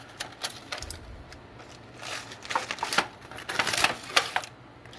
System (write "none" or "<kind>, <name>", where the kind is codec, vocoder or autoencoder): none